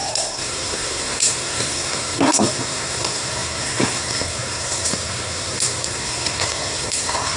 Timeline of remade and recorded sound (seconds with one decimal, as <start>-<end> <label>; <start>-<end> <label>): 0.0-7.4 remade